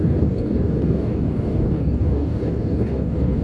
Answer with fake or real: fake